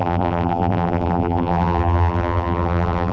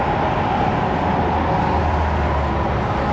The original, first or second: second